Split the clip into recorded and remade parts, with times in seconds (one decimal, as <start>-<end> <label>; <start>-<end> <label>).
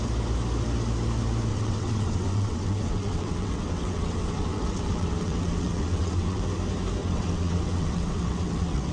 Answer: 0.0-1.5 recorded; 1.5-6.4 remade; 6.4-7.0 recorded; 7.0-8.9 remade